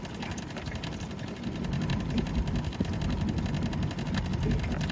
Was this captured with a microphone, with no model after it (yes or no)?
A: yes